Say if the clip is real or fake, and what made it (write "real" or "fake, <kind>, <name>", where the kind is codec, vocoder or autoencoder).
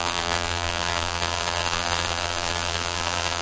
fake, vocoder, BigVGAN v2